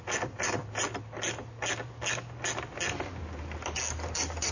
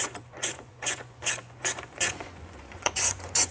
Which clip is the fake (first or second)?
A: second